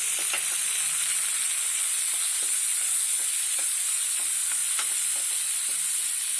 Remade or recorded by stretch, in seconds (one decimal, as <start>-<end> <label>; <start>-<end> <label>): 0.0-4.6 recorded; 4.6-5.2 remade; 5.2-6.4 recorded